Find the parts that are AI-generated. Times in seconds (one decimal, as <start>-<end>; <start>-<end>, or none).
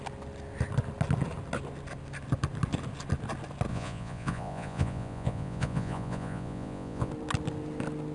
3.7-7.1